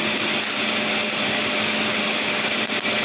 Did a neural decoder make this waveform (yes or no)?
no